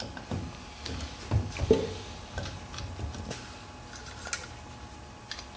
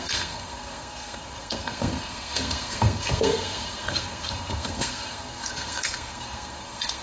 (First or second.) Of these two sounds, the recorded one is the first